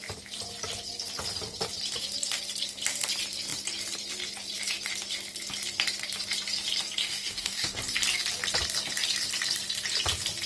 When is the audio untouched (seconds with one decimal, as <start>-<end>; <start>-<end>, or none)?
0.0-7.0; 7.8-10.5